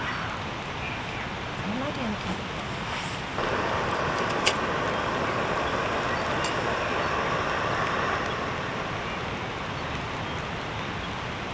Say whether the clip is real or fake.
real